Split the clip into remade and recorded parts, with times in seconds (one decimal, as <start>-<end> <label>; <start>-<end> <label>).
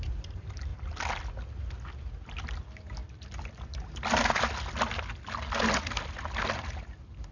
0.0-7.3 recorded